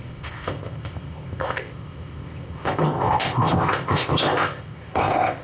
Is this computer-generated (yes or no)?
yes